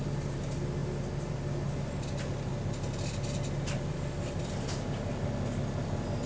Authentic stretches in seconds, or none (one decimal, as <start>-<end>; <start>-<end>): 0.0-6.3